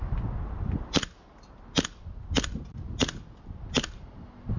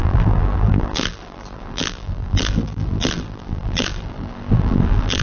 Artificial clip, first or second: second